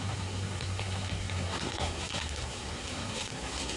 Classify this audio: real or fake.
fake